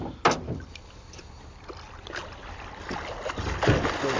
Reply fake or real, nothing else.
real